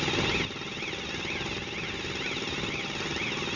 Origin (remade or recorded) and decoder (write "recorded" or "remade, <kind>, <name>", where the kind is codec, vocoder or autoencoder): recorded